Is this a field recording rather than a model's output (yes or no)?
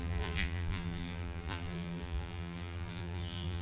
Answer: no